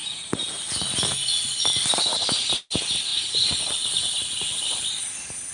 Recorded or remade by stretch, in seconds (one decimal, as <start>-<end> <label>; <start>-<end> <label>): 0.0-2.3 remade; 2.3-5.5 recorded